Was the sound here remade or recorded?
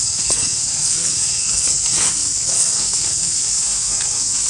remade